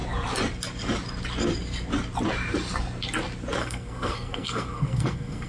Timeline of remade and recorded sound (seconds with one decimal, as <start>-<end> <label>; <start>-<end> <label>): 0.0-3.6 recorded; 3.6-5.5 remade